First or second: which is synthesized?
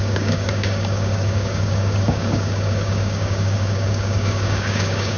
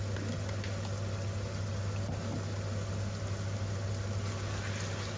first